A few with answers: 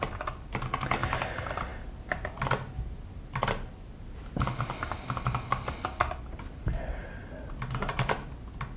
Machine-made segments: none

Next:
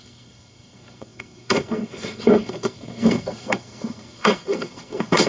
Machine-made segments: 0.0-5.3 (codec, SNAC)

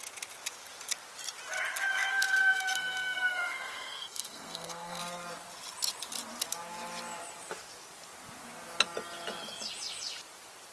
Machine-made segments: 2.1-5.0 (codec, SNAC)

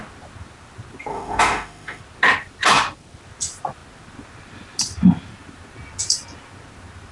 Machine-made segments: 1.1-2.0 (autoencoder, DAC-VAE)

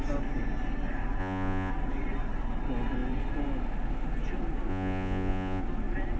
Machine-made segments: 1.2-1.7 (vocoder, Vocos); 4.7-5.6

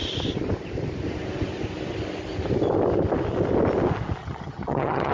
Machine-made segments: 4.2-5.1 (vocoder, HiFi-GAN)

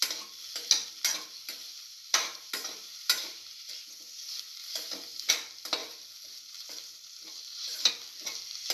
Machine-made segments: 1.6-3.7 (vocoder, BigVGAN v2); 4.6-5.3; 5.8-7.9